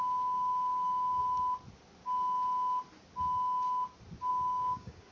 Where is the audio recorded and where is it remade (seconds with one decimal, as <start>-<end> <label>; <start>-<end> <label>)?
0.0-1.2 remade; 1.2-4.3 recorded; 4.3-5.1 remade